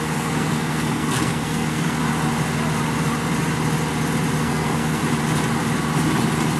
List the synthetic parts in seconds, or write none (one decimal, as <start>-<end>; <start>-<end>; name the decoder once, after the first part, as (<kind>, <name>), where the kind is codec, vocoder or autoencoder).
0.0-2.0 (codec, SNAC); 4.4-5.0